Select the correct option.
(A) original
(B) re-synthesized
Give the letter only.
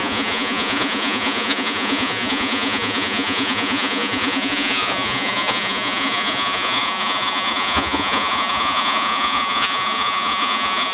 B